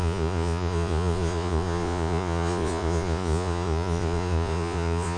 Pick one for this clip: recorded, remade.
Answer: remade